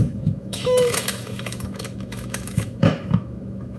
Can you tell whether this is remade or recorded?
remade